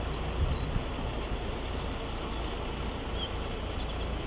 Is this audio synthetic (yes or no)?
no